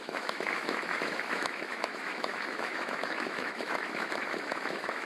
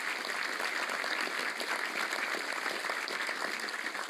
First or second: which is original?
second